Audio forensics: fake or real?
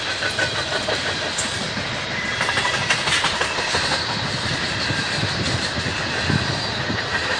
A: real